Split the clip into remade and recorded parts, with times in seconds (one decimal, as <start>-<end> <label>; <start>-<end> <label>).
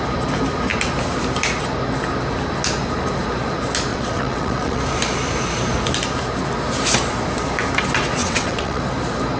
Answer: 0.0-3.9 recorded; 3.9-4.8 remade; 4.8-8.2 recorded; 8.2-8.8 remade; 8.8-9.4 recorded